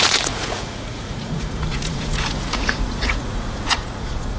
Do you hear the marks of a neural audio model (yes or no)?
yes